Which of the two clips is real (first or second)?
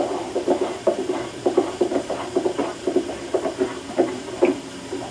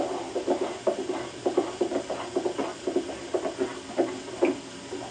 second